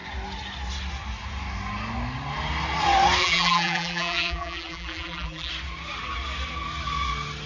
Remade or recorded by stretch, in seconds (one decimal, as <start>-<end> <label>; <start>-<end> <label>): 0.0-3.2 recorded; 3.2-5.5 remade; 5.5-7.5 recorded